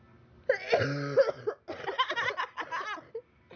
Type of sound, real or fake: real